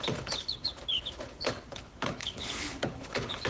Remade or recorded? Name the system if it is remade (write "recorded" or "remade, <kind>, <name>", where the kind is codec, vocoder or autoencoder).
remade, codec, HILCodec